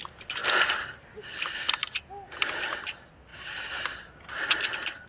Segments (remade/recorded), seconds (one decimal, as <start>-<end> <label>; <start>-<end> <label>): 0.0-5.1 recorded